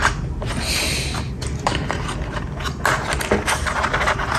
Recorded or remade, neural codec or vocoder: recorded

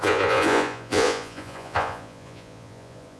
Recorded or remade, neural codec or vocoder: remade, vocoder, Vocos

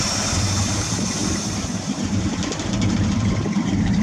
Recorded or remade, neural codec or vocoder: remade, vocoder, BigVGAN v2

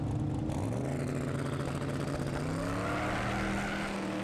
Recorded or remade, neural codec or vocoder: recorded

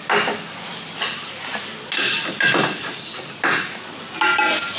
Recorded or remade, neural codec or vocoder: recorded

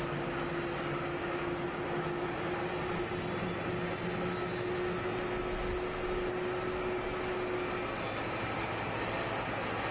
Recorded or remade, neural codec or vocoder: recorded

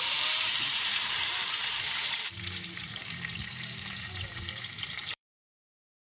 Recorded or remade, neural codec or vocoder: remade, vocoder, BigVGAN v2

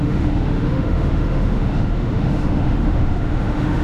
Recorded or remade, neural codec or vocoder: remade, autoencoder, DAC-VAE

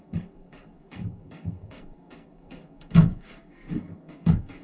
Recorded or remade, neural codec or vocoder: remade, codec, SNAC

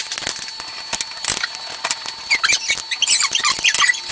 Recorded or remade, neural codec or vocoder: recorded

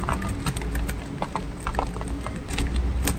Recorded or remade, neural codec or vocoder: recorded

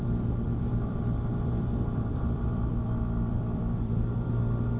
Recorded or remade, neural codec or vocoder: remade, vocoder, BigVGAN v2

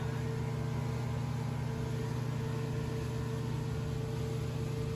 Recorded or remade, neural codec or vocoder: recorded